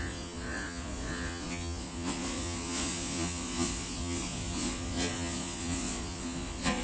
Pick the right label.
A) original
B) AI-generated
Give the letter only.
B